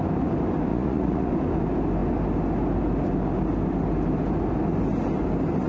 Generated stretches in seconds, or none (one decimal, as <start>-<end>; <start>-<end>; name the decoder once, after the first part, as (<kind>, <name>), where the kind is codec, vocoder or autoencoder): 0.7-1.3 (vocoder, Vocos)